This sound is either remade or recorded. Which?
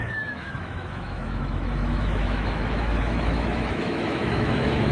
remade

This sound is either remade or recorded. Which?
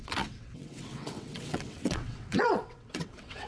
remade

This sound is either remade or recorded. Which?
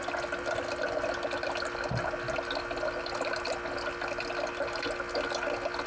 recorded